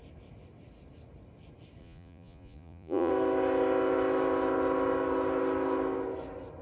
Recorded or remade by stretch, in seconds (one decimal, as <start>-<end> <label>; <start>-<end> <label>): 0.0-1.8 recorded; 1.8-3.1 remade; 3.1-6.6 recorded

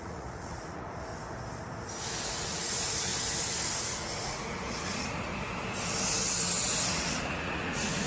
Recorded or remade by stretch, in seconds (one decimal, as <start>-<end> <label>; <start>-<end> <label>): 0.0-1.1 remade; 1.1-2.3 recorded; 2.3-3.1 remade; 3.1-3.7 recorded; 3.7-5.3 remade; 5.3-6.9 recorded; 6.9-8.1 remade

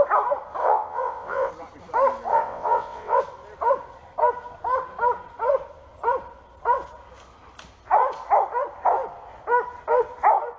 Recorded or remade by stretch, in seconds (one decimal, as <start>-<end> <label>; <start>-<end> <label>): 0.0-0.6 recorded; 0.6-1.5 remade; 1.5-2.3 recorded; 2.3-3.2 remade; 3.2-10.6 recorded

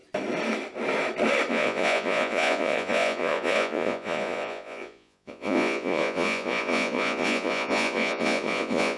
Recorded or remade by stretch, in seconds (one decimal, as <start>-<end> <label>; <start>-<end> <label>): 0.0-1.5 recorded; 1.5-9.0 remade

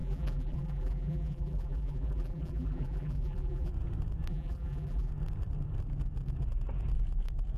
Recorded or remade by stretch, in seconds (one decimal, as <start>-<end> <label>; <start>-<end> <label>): 0.0-3.7 remade; 3.7-4.3 recorded; 4.3-5.1 remade; 5.1-7.6 recorded

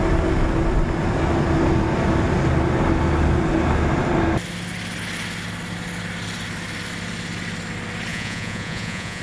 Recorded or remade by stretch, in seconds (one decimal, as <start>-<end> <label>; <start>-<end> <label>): 0.0-8.1 recorded; 8.1-9.2 remade

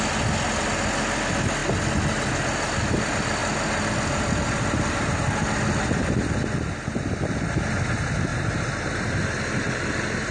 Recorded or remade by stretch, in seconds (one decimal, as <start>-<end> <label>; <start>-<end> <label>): 0.0-10.3 recorded

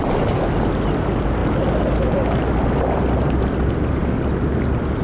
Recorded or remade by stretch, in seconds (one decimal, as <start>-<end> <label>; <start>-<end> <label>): 0.0-5.0 recorded